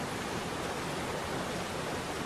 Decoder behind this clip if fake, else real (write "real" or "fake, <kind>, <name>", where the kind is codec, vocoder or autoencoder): real